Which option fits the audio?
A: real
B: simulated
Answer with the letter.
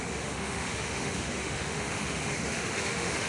B